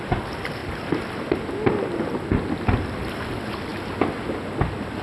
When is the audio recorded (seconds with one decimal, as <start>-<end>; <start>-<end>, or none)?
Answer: 0.0-5.0